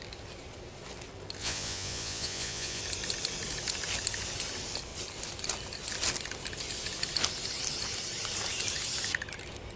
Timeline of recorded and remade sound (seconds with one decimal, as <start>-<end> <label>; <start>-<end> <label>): 0.0-1.4 recorded; 1.4-2.8 remade; 2.8-9.8 recorded